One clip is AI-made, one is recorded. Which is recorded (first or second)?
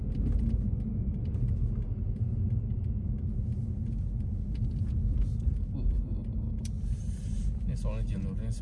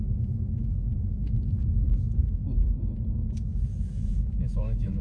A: first